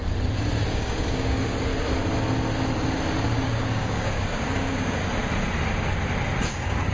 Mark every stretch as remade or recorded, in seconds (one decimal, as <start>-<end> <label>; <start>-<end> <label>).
0.0-0.7 recorded; 0.7-1.7 remade; 1.7-3.2 recorded; 3.2-5.0 remade; 5.0-6.5 recorded; 6.5-6.9 remade